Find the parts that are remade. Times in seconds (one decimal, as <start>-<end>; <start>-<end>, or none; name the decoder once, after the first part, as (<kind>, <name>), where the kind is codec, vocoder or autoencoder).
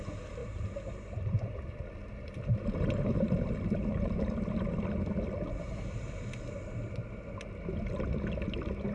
0.4-4.2 (vocoder, BigVGAN v2)